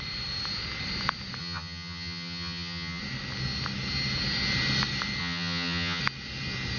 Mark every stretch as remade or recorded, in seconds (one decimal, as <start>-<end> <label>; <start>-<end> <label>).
0.0-1.4 recorded; 1.4-3.0 remade; 3.0-5.2 recorded; 5.2-6.0 remade; 6.0-6.8 recorded